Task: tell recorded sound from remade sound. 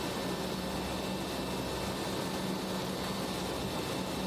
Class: recorded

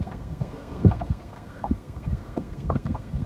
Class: remade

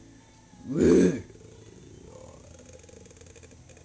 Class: recorded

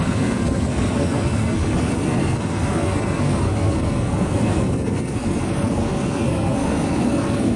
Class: remade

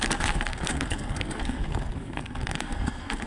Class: remade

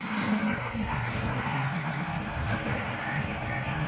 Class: remade